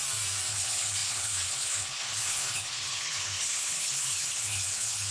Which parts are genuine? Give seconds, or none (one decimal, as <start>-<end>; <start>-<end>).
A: 0.0-0.5

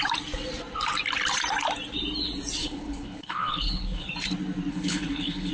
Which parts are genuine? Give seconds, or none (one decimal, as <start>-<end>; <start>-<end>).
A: 0.0-2.6; 4.1-4.7

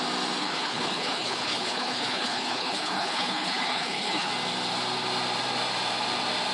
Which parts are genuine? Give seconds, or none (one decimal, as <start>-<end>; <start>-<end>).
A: 0.0-0.4; 4.3-6.5

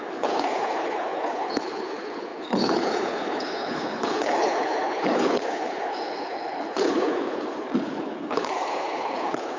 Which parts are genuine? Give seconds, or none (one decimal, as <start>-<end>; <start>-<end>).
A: none

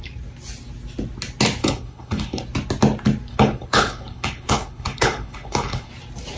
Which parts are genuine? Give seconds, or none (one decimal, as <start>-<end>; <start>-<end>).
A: 0.0-1.6; 2.4-3.3; 5.9-6.4